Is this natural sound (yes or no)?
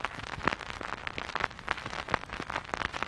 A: yes